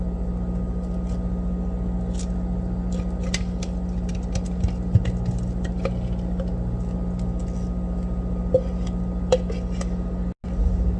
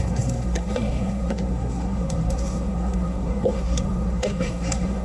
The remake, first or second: second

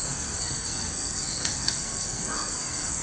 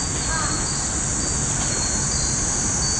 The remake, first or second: first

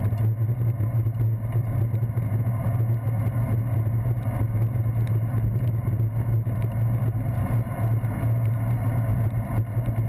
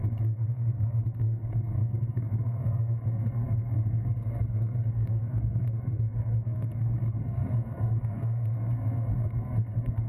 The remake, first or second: second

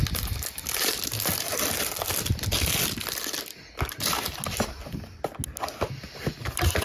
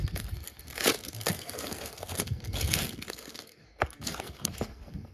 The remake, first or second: second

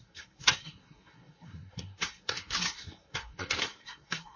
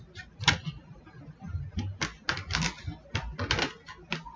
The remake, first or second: first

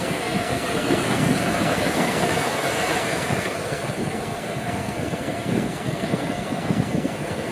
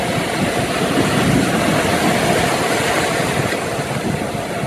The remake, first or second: first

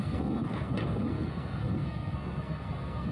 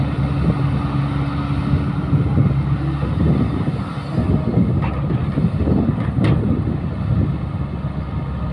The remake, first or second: first